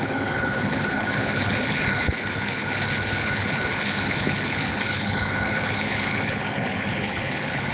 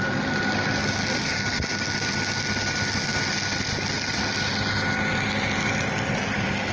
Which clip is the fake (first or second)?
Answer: first